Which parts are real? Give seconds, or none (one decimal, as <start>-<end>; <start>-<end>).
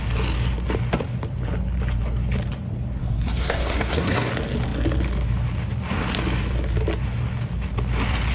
0.0-3.0; 4.3-8.3